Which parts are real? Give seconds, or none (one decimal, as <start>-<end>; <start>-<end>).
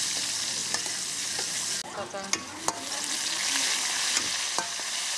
0.0-5.2